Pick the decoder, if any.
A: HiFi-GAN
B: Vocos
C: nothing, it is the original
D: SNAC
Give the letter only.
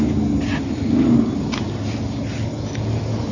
C